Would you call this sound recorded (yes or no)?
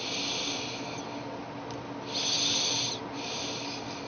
yes